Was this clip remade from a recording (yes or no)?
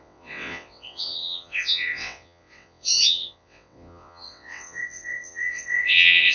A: yes